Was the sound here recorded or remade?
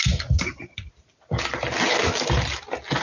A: recorded